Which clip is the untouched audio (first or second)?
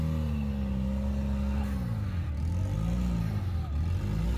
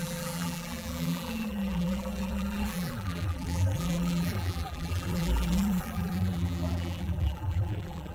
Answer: first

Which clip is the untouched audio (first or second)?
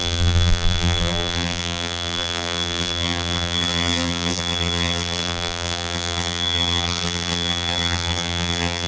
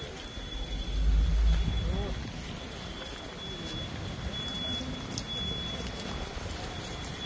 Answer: second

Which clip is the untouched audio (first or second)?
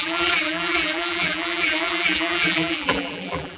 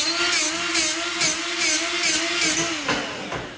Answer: second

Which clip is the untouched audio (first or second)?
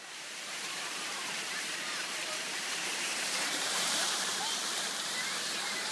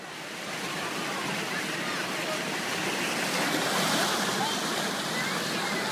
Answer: second